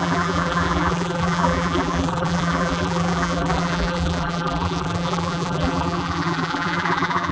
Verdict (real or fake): fake